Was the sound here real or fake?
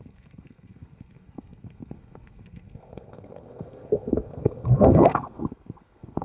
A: fake